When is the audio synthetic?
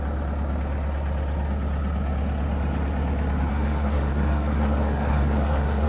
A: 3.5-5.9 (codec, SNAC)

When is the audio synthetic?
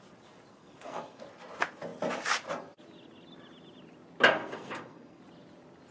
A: 0.5-1.2 (codec, SNAC); 4.3-5.2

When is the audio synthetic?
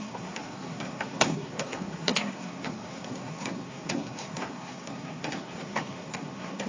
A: 0.0-6.7 (codec, SNAC)